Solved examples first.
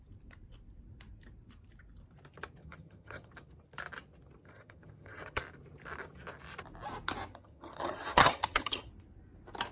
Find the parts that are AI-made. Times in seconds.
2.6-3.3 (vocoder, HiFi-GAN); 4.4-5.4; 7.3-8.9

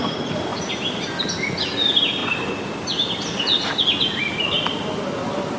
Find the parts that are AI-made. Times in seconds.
none

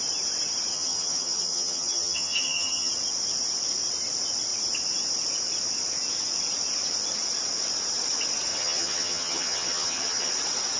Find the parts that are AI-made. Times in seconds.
0.7-2.9 (vocoder, HiFi-GAN); 8.5-10.3

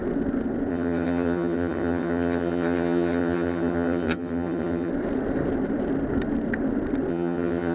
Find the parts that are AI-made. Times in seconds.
0.7-4.9 (vocoder, HiFi-GAN); 7.1-7.7

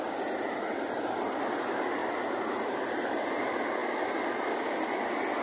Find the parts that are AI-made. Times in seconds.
none

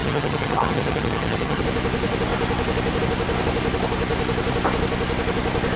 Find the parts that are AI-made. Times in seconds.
0.0-1.6 (vocoder, HiFi-GAN)